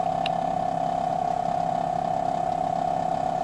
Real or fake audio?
real